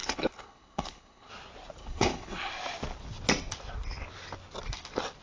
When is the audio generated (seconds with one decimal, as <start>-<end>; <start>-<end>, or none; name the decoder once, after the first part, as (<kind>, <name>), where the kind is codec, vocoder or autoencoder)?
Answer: 0.0-1.3 (codec, HILCodec); 1.8-2.5